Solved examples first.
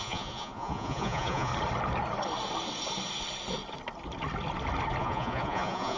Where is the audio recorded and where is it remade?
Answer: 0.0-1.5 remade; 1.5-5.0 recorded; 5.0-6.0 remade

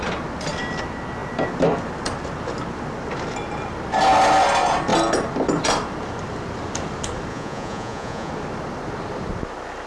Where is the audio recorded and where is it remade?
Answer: 0.0-7.3 recorded; 7.3-8.3 remade; 8.3-9.9 recorded